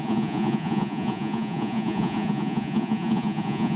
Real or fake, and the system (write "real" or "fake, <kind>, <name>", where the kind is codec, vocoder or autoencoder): fake, vocoder, Vocos